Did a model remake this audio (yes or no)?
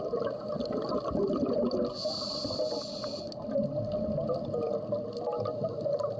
no